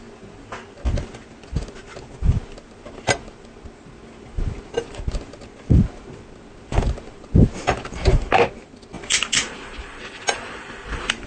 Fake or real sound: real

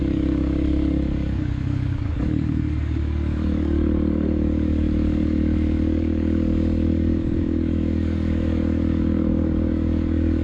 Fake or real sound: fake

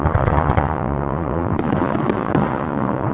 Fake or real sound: fake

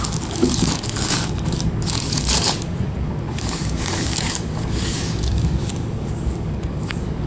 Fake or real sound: fake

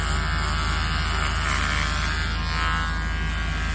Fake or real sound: real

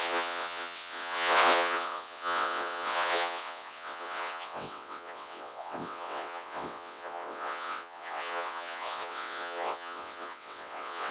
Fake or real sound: fake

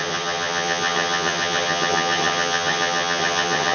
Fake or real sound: fake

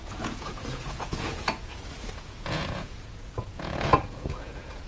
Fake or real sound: fake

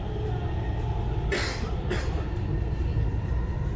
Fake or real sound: real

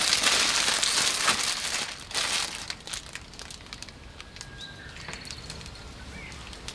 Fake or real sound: real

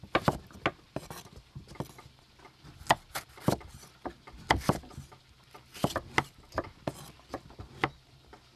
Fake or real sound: real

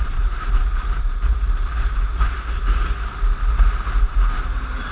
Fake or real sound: fake